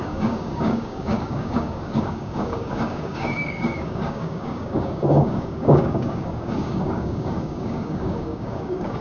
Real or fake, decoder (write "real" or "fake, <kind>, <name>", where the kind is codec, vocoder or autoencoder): fake, codec, DAC